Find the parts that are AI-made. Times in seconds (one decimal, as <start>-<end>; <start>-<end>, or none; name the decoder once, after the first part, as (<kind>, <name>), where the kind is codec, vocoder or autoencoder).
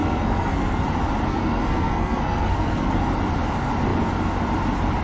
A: 0.0-0.8 (codec, SNAC); 1.3-2.9